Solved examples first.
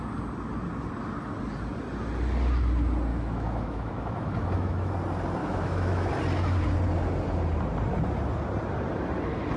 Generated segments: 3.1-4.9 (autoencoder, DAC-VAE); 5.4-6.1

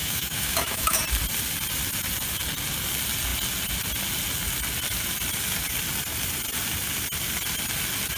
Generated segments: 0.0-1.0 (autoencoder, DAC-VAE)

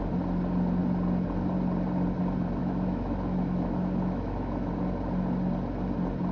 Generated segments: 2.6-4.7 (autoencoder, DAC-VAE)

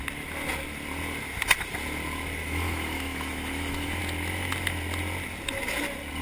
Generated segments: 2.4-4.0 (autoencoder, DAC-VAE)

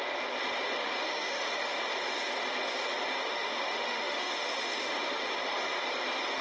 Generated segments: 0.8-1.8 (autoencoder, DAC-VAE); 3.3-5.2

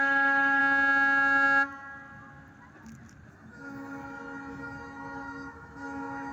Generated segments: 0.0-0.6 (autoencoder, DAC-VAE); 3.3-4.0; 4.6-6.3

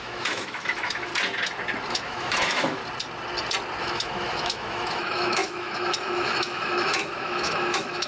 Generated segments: 0.0-1.1 (autoencoder, DAC-VAE); 1.9-2.8; 3.8-8.1